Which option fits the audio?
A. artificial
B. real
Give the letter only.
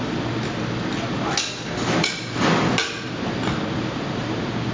B